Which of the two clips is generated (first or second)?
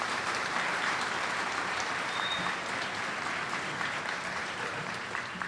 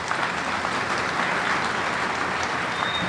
first